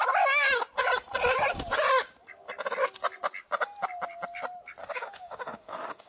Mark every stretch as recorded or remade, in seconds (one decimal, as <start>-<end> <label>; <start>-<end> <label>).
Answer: 0.0-4.8 recorded; 4.8-6.1 remade